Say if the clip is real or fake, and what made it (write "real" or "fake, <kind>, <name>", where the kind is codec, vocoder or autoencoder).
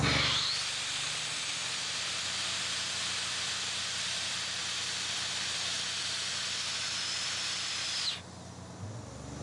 real